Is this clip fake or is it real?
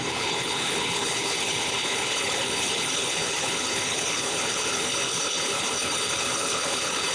fake